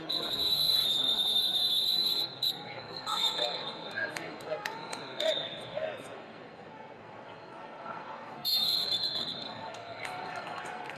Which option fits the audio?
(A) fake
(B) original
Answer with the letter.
A